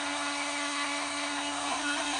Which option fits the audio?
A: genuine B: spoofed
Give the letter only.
B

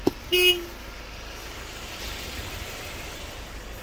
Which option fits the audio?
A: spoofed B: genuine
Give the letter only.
B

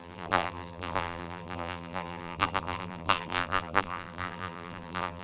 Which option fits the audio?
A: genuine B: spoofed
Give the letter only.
B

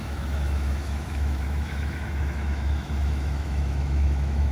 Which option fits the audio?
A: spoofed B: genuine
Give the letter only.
A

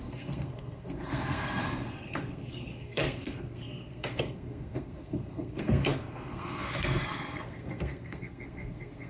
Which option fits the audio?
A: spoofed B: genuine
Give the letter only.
A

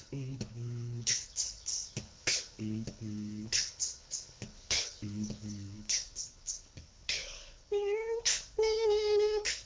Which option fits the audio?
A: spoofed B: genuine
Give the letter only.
A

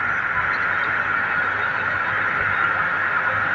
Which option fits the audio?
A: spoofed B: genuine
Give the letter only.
B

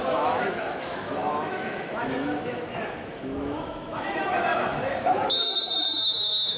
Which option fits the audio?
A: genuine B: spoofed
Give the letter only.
B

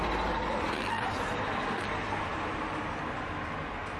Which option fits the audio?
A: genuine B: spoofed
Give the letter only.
A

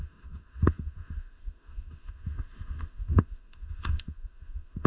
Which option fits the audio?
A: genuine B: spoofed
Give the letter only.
B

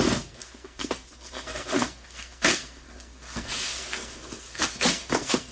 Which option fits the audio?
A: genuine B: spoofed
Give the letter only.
B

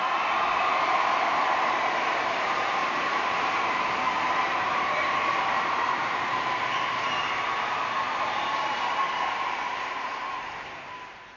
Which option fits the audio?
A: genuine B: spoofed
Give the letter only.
B